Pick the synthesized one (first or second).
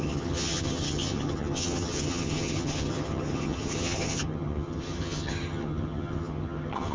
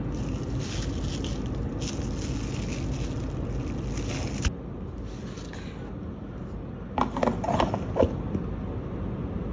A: first